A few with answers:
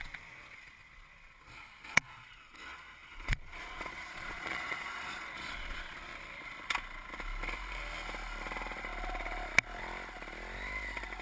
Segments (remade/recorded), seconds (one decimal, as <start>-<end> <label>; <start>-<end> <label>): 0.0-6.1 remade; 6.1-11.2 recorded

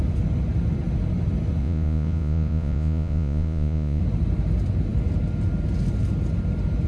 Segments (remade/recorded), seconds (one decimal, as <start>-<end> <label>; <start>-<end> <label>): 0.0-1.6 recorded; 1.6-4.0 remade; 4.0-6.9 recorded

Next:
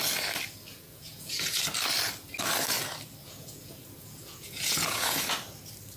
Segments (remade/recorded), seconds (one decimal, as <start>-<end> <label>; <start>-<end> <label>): 0.0-0.7 recorded; 0.7-1.6 remade; 1.6-3.2 recorded; 3.2-5.3 remade; 5.3-6.0 recorded